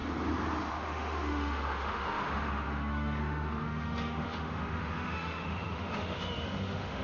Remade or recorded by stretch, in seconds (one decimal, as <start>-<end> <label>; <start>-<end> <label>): 0.0-0.7 recorded; 0.7-7.0 remade